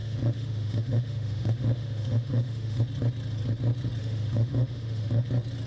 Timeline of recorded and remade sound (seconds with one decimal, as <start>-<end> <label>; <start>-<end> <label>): 0.0-2.8 remade; 2.8-4.0 recorded; 4.0-5.3 remade; 5.3-5.7 recorded